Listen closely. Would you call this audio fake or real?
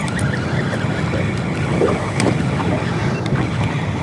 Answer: real